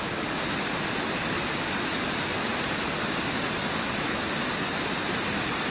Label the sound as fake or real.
real